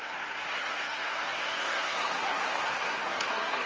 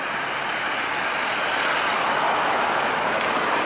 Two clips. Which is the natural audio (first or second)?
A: second